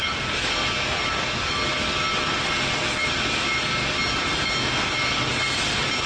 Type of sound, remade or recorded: recorded